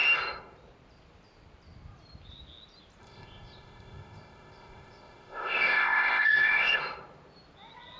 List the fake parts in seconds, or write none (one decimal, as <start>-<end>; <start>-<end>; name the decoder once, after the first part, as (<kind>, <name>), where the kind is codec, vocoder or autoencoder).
3.0-6.8 (codec, ZipCodec)